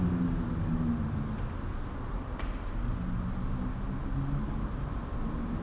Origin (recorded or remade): recorded